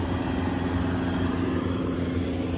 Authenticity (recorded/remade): recorded